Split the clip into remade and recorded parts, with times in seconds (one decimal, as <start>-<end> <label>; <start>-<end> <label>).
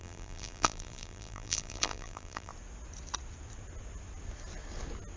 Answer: 0.0-2.5 remade; 2.5-5.2 recorded